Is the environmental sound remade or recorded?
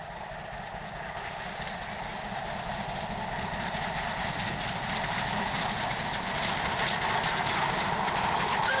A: recorded